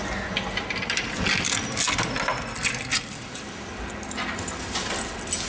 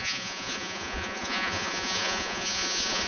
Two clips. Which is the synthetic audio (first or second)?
second